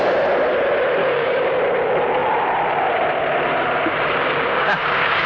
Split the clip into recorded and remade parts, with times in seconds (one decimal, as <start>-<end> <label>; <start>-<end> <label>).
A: 0.0-1.0 recorded; 1.0-1.5 remade; 1.5-4.2 recorded; 4.2-5.3 remade